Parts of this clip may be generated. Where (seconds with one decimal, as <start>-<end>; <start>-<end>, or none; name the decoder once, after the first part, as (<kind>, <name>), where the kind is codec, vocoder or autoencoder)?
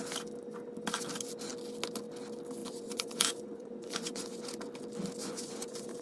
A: 2.6-4.4 (vocoder, Vocos); 5.2-6.0